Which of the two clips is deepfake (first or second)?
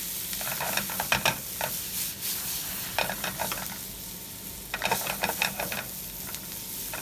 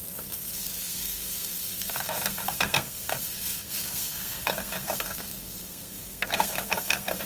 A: second